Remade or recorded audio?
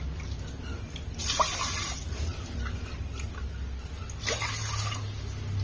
recorded